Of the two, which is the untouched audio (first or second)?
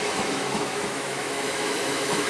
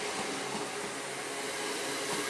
second